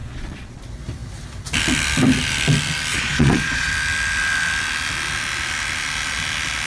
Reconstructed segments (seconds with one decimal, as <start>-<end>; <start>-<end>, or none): 0.0-0.6; 2.9-3.7